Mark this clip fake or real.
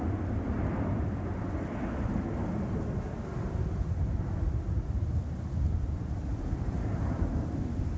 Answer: real